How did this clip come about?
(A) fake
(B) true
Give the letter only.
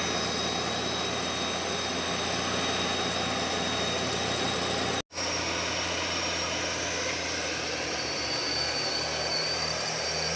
B